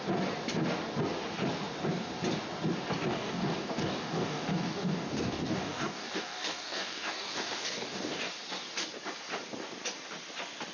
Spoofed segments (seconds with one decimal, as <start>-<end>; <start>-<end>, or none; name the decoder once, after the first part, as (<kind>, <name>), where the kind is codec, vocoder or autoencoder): 3.1-8.2 (codec, DAC)